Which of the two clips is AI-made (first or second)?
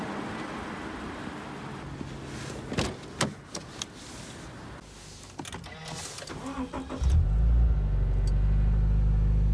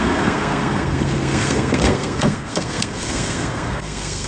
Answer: second